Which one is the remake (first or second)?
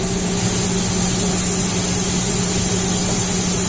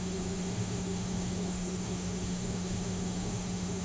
second